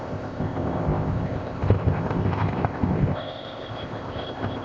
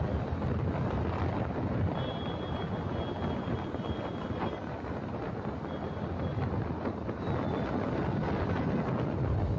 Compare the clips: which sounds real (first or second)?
second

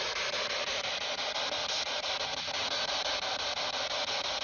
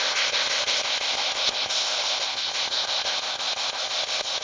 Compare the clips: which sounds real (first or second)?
first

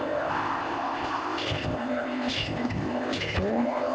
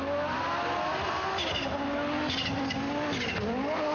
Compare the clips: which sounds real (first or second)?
second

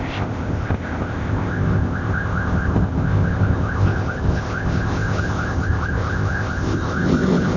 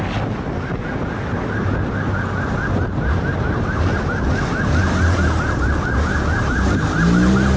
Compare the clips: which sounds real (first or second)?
second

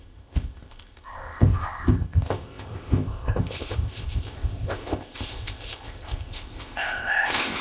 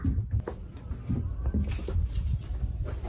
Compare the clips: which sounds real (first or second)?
second